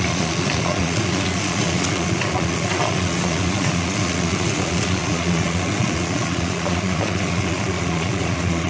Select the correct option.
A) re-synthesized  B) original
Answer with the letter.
A